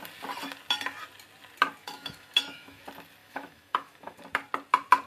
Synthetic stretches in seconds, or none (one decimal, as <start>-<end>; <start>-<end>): 1.8-2.8; 3.2-4.2